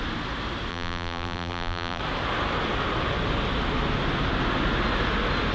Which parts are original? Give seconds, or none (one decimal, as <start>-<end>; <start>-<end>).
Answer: 0.0-0.7; 2.0-5.5